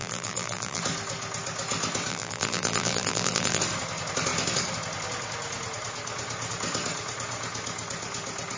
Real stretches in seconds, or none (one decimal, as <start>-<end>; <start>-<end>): 0.8-2.1; 3.6-8.6